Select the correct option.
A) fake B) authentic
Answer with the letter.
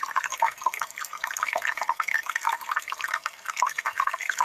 A